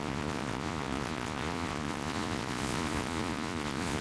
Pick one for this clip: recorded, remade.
remade